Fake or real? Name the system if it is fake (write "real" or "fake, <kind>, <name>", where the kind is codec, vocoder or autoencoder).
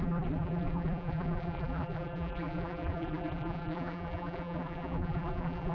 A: fake, vocoder, BigVGAN v2